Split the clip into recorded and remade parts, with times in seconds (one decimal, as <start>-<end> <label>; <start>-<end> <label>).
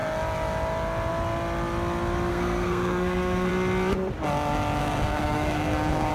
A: 0.0-2.3 recorded; 2.3-3.5 remade; 3.5-4.8 recorded; 4.8-6.1 remade